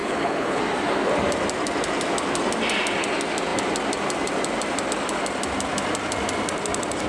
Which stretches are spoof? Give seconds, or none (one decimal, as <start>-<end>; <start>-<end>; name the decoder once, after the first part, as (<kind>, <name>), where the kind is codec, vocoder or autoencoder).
0.0-0.6 (codec, HILCodec)